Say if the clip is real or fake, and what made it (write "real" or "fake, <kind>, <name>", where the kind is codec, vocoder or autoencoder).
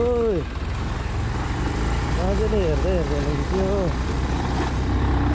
real